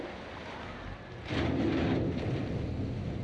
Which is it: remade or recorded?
recorded